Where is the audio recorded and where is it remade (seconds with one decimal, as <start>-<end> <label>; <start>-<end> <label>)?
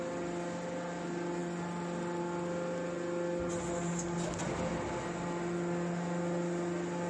0.0-7.1 recorded